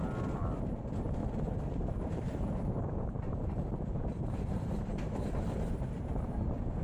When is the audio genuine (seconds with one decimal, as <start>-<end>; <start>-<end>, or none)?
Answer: 0.0-1.2; 4.8-6.8